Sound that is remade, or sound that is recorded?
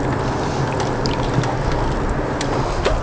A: recorded